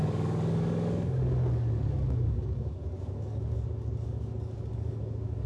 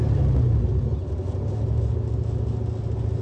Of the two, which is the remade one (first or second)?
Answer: first